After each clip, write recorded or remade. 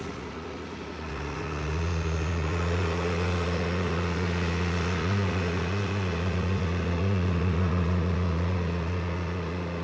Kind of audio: remade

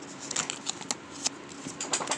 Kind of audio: recorded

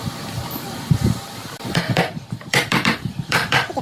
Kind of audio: remade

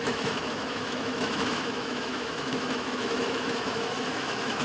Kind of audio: remade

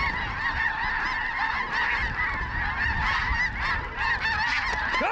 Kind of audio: recorded